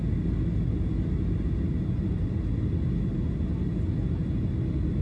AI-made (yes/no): no